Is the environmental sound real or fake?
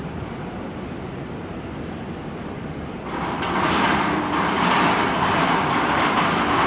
fake